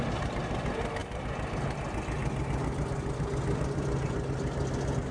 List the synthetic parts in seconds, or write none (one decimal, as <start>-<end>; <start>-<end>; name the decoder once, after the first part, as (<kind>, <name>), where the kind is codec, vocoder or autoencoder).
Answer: none